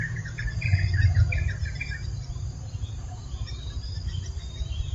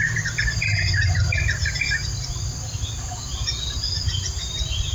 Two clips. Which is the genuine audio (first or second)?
second